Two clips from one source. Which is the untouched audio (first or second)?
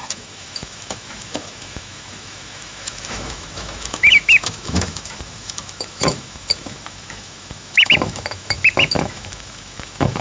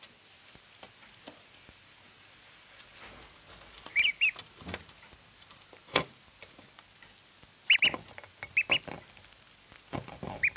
second